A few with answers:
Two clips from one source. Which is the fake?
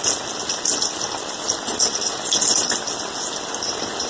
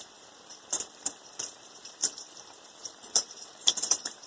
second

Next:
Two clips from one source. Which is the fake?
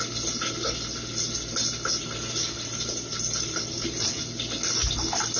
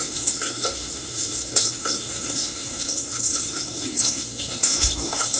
second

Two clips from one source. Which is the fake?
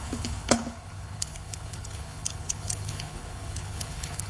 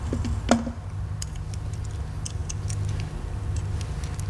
first